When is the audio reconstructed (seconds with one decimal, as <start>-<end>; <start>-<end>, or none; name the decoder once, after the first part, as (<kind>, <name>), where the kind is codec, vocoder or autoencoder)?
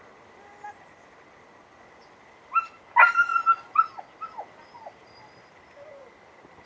none